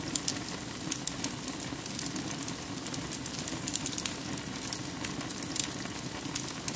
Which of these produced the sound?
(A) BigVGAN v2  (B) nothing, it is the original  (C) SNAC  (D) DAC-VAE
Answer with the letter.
B